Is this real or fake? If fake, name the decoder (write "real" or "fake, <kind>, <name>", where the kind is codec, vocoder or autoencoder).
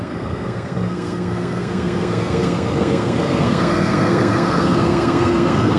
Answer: fake, codec, SNAC